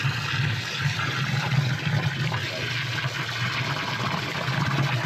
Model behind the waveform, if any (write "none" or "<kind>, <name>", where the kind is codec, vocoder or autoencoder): none